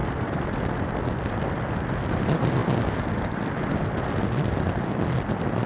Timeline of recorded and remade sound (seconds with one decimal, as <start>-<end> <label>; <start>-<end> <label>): 0.0-0.7 remade; 0.7-5.7 recorded